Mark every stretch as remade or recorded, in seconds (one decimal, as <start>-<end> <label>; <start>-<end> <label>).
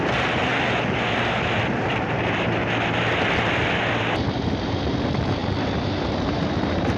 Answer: 0.0-0.5 remade; 0.5-1.7 recorded; 1.7-2.6 remade; 2.6-4.0 recorded; 4.0-7.0 remade